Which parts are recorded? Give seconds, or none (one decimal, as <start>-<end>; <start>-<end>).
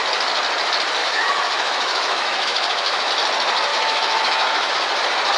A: 0.0-1.0; 3.1-3.7; 4.7-5.4